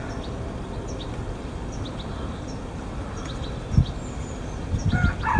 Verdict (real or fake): real